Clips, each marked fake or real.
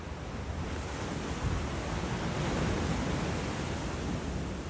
real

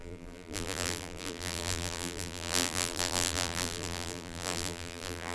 fake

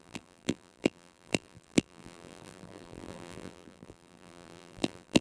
fake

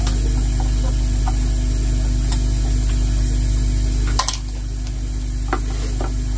real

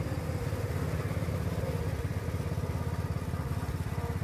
real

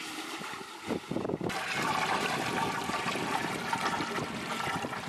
fake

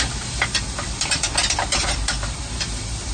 fake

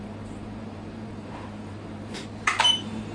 fake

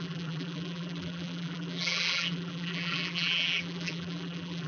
fake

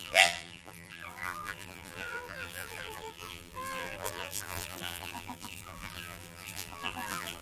fake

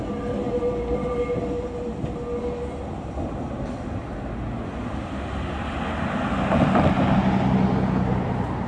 real